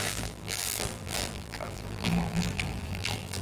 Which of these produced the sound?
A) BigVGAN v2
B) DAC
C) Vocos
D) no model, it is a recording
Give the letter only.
A